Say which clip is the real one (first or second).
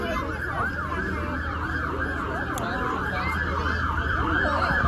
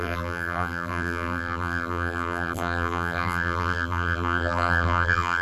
first